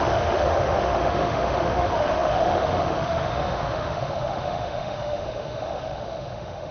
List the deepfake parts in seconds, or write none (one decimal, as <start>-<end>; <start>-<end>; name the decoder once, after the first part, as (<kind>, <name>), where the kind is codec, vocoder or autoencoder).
0.0-6.7 (autoencoder, DAC-VAE)